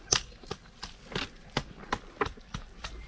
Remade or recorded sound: recorded